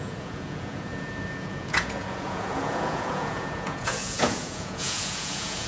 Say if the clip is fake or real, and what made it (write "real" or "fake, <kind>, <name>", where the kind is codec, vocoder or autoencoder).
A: fake, vocoder, Vocos